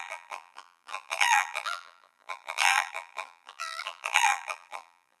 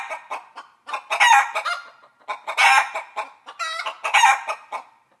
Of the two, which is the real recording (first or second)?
second